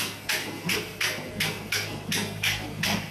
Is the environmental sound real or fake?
fake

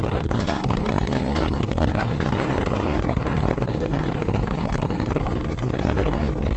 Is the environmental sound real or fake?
fake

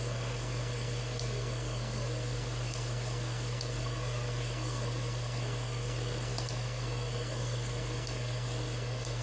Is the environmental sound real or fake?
fake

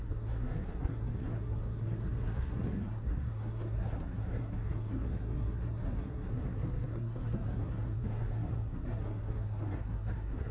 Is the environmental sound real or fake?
fake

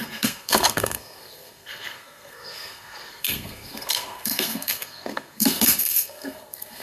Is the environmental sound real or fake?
fake